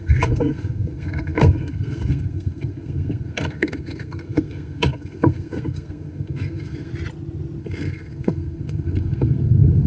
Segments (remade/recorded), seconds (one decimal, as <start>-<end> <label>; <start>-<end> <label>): 0.0-6.9 remade; 6.9-7.6 recorded; 7.6-9.9 remade